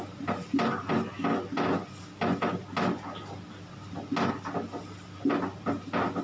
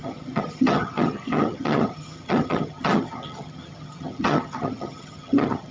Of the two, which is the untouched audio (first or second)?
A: first